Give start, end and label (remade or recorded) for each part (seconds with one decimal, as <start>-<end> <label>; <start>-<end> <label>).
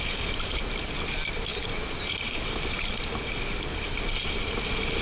0.0-5.0 recorded